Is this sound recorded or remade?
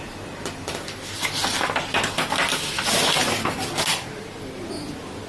recorded